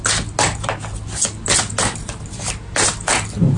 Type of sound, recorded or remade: recorded